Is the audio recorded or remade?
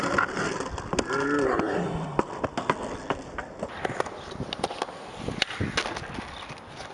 recorded